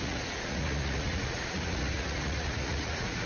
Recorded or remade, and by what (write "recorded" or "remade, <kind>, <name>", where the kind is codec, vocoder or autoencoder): remade, vocoder, Vocos